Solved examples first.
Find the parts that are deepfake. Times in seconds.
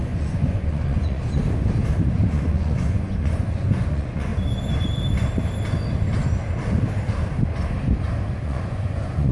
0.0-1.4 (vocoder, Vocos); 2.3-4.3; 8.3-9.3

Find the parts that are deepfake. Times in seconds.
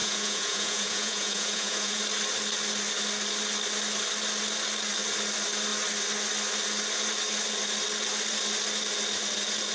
0.0-2.0 (vocoder, Vocos)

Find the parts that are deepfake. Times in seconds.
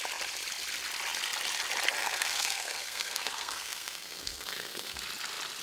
2.0-5.0 (codec, SNAC)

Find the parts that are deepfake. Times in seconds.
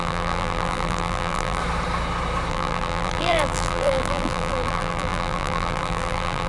0.0-1.6 (vocoder, BigVGAN v2); 2.5-6.5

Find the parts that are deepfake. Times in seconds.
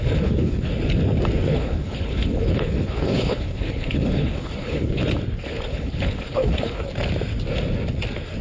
0.0-0.7 (codec, HILCodec); 1.4-5.0; 5.7-6.9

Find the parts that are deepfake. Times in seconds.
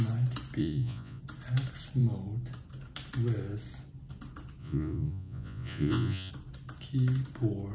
0.6-1.2 (vocoder, Vocos); 4.6-6.3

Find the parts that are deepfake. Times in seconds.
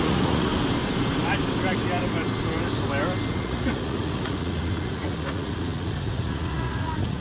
0.0-0.5 (vocoder, Vocos); 3.3-7.2